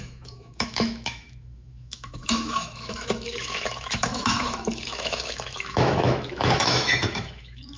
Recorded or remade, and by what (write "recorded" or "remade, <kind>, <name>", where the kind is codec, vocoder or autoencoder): remade, autoencoder, DAC-VAE